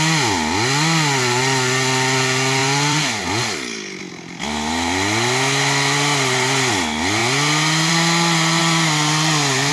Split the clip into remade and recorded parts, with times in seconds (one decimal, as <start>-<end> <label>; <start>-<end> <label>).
0.0-2.6 recorded; 2.6-3.2 remade; 3.2-9.7 recorded